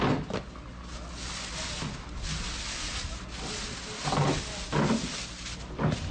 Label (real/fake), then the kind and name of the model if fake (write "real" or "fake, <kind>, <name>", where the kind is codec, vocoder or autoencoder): real